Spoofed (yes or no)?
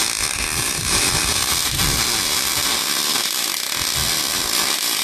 no